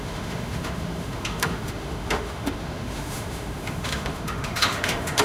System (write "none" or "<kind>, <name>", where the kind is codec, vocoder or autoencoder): autoencoder, DAC-VAE